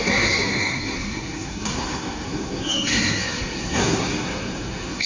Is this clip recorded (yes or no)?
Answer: no